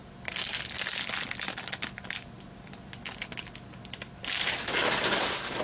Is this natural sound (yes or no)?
yes